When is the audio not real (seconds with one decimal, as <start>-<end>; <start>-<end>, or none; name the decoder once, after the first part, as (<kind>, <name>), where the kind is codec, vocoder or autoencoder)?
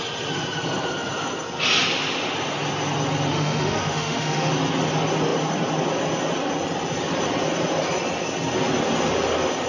3.3-4.5 (autoencoder, DAC-VAE)